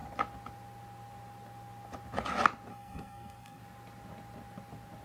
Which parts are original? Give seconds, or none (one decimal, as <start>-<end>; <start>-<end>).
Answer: 0.0-2.7; 3.6-5.0